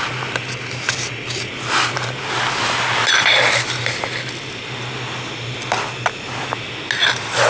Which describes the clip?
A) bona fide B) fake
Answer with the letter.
A